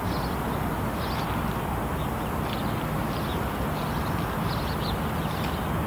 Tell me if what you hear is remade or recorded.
recorded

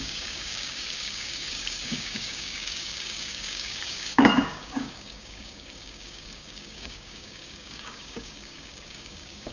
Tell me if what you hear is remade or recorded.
remade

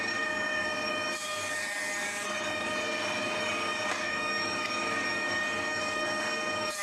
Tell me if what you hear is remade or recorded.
remade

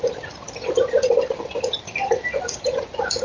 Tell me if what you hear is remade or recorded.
recorded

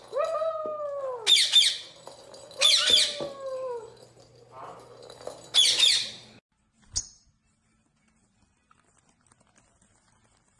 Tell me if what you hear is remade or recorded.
recorded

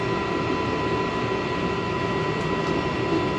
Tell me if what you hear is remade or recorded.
recorded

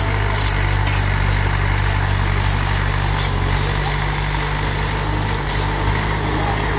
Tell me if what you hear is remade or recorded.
recorded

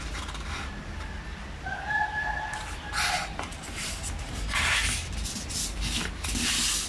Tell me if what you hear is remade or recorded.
recorded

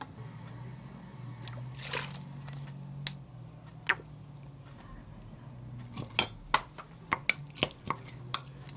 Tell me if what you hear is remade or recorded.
recorded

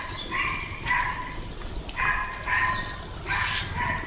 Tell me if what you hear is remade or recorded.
recorded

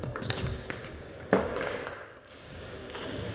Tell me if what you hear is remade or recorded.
remade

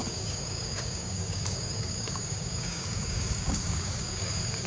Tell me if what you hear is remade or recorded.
remade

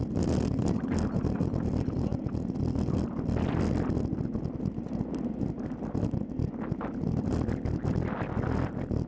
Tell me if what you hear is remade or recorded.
recorded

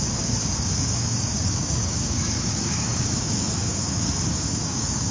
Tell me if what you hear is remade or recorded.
remade